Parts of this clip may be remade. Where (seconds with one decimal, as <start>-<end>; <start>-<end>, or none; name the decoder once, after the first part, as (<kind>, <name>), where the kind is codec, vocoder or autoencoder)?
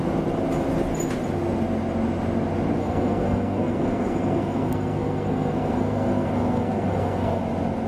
2.8-7.4 (codec, SNAC)